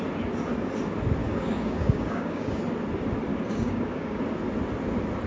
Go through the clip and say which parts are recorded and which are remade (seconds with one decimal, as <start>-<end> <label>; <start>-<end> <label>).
0.0-1.2 recorded; 1.2-2.6 remade; 2.6-3.3 recorded; 3.3-4.2 remade; 4.2-5.3 recorded